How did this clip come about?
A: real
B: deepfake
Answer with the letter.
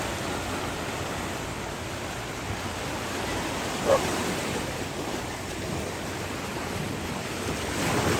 B